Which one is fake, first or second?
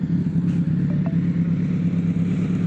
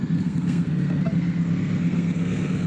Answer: second